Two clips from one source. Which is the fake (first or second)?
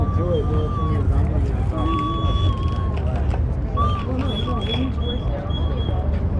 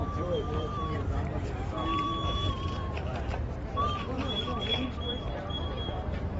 second